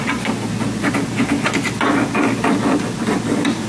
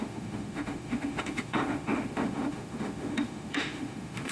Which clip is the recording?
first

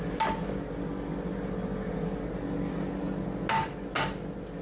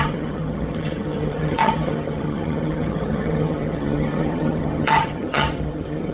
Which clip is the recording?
first